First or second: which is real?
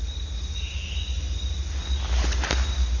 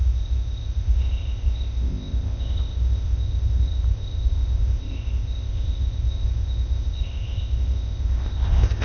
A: first